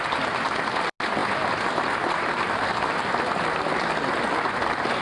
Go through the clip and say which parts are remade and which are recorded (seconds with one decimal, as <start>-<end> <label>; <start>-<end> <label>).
0.0-5.0 recorded